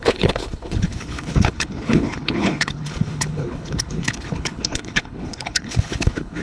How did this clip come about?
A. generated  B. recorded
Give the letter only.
A